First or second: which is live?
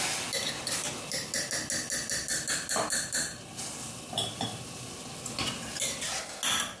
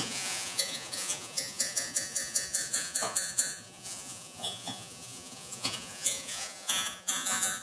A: first